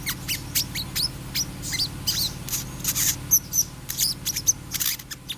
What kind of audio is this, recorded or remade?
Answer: recorded